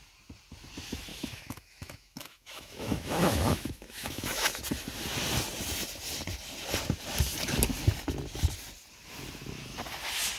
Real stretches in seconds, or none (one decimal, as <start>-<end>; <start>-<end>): 0.0-1.1; 4.6-10.4